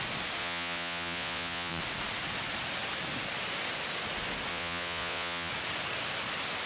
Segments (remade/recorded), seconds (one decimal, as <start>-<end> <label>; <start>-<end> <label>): 0.0-0.4 recorded; 0.4-1.8 remade; 1.8-4.5 recorded; 4.5-5.5 remade; 5.5-6.7 recorded